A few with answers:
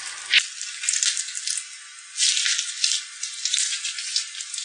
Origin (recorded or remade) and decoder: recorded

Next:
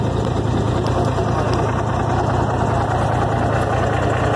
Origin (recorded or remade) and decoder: recorded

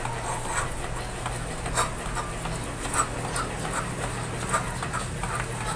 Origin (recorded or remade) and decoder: recorded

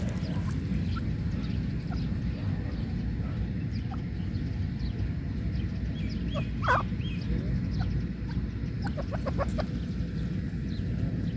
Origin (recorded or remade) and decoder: recorded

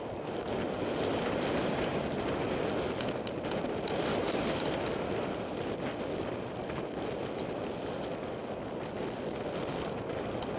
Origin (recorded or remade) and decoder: recorded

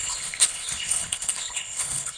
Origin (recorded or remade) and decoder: remade, codec, HILCodec